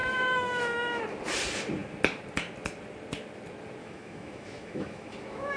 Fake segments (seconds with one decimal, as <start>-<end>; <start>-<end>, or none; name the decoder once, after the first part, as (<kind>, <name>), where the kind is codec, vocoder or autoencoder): 0.0-1.0 (autoencoder, DAC-VAE); 3.8-5.6